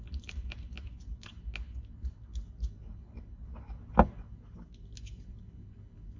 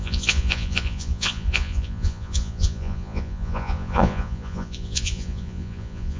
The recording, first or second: first